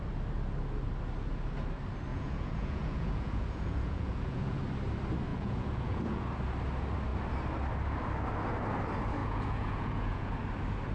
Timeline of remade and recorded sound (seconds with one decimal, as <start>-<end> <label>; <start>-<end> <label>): 0.0-2.1 recorded; 2.1-4.6 remade; 4.6-5.3 recorded; 5.3-6.2 remade; 6.2-9.2 recorded; 9.2-10.3 remade; 10.3-10.9 recorded